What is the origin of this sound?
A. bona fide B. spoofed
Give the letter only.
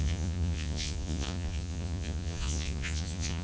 B